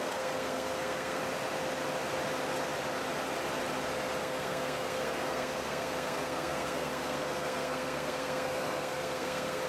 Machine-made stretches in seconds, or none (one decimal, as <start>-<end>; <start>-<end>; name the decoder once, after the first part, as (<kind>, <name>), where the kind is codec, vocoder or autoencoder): 0.0-1.2 (codec, SNAC); 4.2-9.7